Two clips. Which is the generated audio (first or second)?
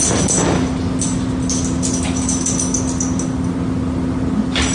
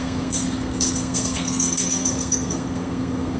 second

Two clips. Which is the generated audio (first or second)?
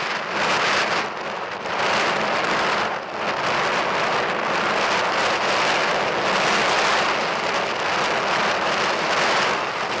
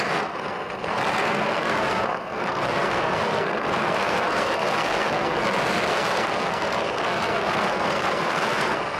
second